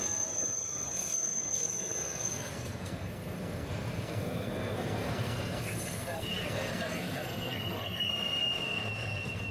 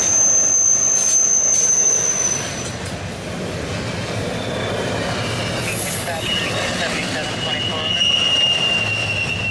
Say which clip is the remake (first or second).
first